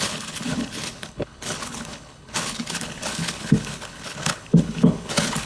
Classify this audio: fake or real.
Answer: fake